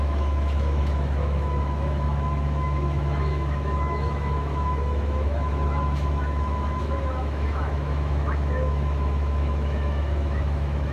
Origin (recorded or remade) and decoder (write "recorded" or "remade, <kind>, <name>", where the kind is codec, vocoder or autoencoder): remade, autoencoder, DAC-VAE